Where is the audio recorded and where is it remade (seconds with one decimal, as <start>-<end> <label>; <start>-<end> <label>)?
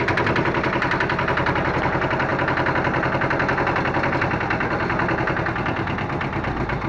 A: 0.0-6.9 recorded